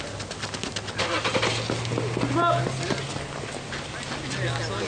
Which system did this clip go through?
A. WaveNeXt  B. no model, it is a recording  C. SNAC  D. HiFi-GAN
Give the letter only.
B